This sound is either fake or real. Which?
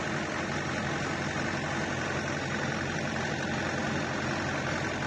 real